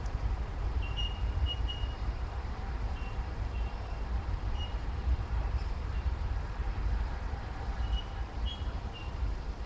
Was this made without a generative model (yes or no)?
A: no